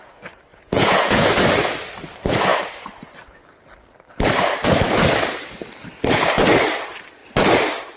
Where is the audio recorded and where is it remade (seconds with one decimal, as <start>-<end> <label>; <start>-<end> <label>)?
0.0-0.5 recorded; 0.5-1.3 remade; 1.3-8.0 recorded